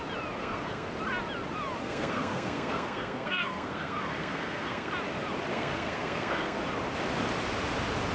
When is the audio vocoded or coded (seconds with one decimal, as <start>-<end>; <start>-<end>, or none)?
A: 0.4-0.9; 1.8-4.9; 5.5-6.6